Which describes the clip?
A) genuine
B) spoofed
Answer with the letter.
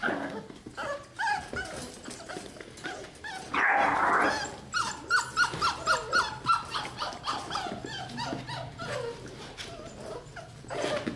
A